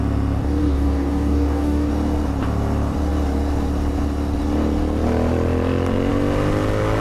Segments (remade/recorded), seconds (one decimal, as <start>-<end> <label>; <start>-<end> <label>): 0.0-0.6 recorded; 0.6-1.9 remade; 1.9-7.0 recorded